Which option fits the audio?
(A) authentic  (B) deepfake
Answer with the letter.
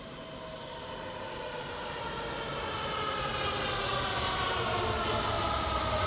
A